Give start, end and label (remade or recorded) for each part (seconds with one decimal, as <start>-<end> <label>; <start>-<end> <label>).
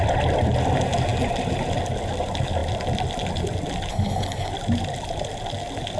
0.0-3.9 recorded; 3.9-4.5 remade; 4.5-6.0 recorded